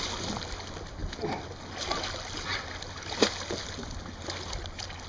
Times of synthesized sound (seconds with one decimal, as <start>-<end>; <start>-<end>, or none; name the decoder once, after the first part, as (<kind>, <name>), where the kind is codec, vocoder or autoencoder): none